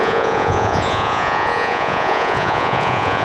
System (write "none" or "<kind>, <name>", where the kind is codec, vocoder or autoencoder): vocoder, Vocos